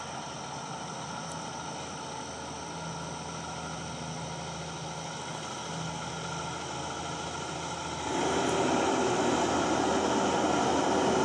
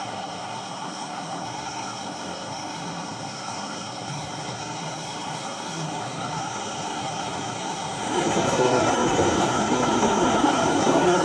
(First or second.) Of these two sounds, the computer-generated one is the second